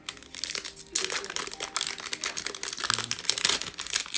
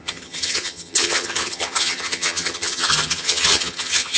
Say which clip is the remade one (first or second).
second